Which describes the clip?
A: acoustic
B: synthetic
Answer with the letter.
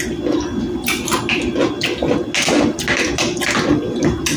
A